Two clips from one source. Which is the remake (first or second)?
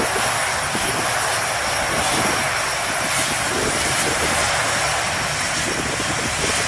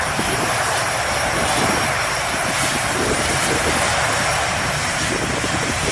second